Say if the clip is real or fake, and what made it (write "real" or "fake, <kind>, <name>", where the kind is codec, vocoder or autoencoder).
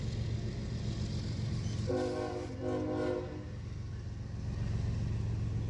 real